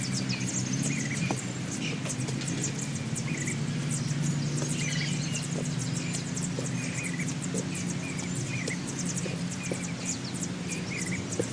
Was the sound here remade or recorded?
recorded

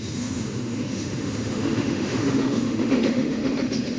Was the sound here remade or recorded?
remade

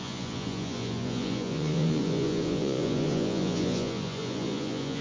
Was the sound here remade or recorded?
remade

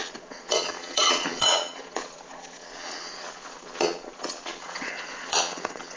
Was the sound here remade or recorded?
remade